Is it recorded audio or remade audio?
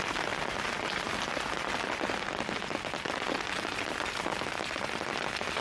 recorded